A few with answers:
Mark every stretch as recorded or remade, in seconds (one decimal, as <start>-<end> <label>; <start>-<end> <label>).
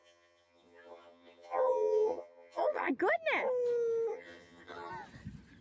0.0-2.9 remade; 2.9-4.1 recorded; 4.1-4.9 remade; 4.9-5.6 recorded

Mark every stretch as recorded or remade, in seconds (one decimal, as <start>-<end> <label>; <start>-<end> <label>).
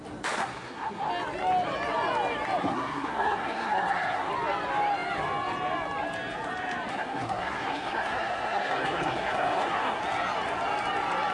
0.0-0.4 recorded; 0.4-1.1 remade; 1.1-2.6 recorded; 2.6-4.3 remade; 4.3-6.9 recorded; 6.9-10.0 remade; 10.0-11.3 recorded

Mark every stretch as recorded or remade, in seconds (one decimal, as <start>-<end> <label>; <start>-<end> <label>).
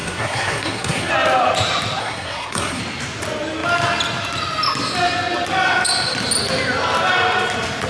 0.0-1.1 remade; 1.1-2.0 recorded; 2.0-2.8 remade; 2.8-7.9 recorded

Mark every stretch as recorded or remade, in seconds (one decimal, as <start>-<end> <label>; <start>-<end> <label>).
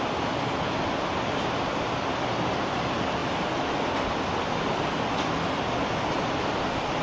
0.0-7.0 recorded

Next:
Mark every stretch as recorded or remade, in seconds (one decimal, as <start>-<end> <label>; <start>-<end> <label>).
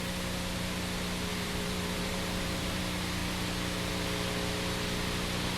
0.0-1.3 recorded; 1.3-2.8 remade; 2.8-5.6 recorded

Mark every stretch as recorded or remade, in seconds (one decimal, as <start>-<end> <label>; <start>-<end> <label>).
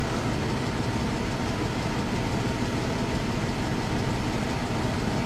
0.0-5.3 recorded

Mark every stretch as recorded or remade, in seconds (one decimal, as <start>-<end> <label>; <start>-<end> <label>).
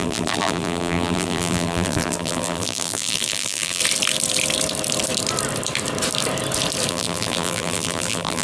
0.0-3.8 remade; 3.8-6.9 recorded; 6.9-8.4 remade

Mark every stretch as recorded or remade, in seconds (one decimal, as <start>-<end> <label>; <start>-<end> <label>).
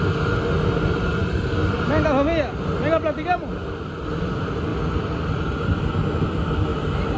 0.0-6.7 recorded; 6.7-7.2 remade